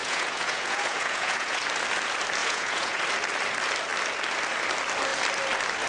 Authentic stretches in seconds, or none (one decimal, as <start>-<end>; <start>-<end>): 1.6-2.4; 3.0-5.9